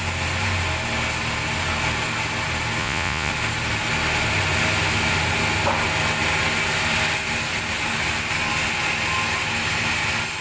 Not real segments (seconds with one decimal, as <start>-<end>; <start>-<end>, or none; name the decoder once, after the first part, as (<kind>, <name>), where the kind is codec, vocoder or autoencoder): 2.8-3.3 (vocoder, Vocos)